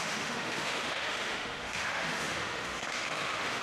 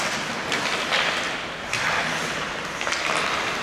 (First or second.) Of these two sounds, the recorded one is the second